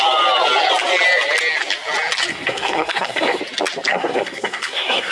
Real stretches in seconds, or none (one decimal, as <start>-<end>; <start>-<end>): 0.0-2.3; 3.4-3.9